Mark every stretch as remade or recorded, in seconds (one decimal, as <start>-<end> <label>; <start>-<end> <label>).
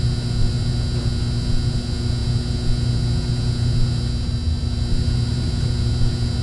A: 0.0-6.4 recorded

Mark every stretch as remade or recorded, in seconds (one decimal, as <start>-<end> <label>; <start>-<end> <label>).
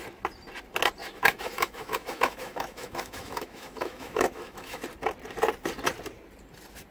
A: 0.0-1.0 recorded; 1.0-4.8 remade; 4.8-6.9 recorded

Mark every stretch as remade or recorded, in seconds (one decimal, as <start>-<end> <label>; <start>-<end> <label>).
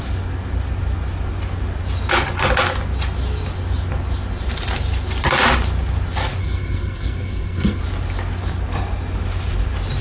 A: 0.0-6.4 recorded; 6.4-7.8 remade; 7.8-10.0 recorded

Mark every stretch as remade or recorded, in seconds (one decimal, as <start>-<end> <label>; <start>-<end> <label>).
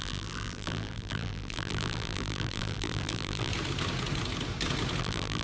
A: 0.0-3.5 remade; 3.5-5.0 recorded; 5.0-5.4 remade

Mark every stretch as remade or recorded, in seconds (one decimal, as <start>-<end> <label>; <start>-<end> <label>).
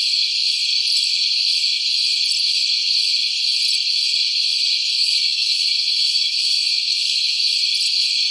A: 0.0-4.9 recorded; 4.9-7.4 remade; 7.4-8.3 recorded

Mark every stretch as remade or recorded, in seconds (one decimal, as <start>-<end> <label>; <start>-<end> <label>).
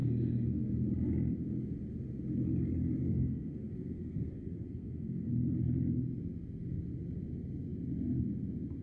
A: 0.0-0.7 remade; 0.7-3.0 recorded; 3.0-5.3 remade; 5.3-8.8 recorded